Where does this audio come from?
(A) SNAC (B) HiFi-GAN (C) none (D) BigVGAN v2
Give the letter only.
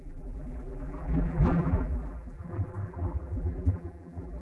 D